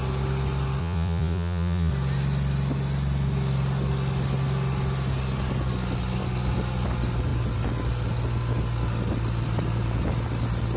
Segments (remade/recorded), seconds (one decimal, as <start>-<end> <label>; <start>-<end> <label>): 0.0-0.8 recorded; 0.8-1.9 remade; 1.9-10.8 recorded

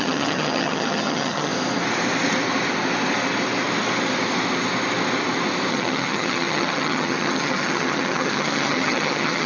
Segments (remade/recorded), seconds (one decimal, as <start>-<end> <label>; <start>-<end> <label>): 0.0-1.5 remade; 1.5-5.7 recorded; 5.7-9.5 remade

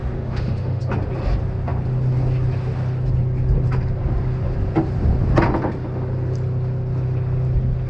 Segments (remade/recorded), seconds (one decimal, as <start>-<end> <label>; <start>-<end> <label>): 0.0-0.8 remade; 0.8-7.9 recorded

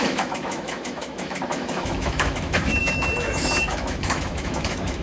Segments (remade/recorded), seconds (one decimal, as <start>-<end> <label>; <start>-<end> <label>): 0.0-5.0 remade

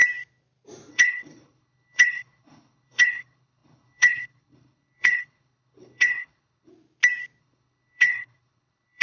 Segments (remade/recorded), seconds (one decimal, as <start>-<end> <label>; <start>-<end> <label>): 0.0-0.9 recorded; 0.9-6.7 remade; 6.7-7.4 recorded; 7.4-9.0 remade